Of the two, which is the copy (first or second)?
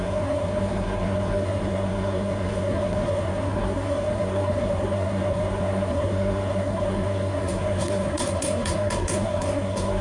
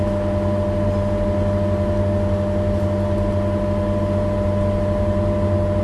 first